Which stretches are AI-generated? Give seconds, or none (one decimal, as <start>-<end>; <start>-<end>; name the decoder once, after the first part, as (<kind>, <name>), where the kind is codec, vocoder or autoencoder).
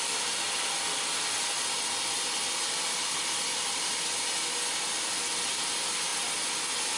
none